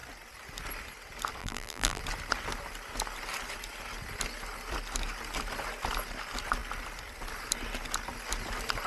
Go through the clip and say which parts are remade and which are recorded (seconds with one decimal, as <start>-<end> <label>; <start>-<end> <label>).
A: 0.0-1.4 recorded; 1.4-2.0 remade; 2.0-8.9 recorded